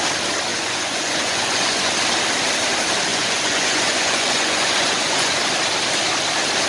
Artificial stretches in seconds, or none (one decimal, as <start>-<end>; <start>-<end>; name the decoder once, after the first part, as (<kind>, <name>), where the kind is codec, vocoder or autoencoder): 0.5-1.9 (vocoder, Vocos); 3.1-5.4